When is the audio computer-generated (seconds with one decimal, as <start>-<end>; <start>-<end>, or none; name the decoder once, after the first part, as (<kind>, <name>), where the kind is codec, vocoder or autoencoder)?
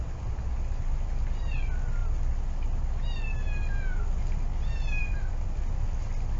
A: none